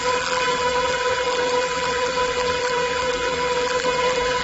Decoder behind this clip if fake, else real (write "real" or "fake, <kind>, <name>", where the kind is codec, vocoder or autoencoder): fake, vocoder, BigVGAN v2